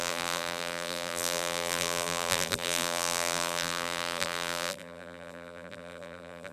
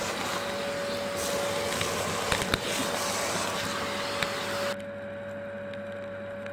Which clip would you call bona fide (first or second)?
second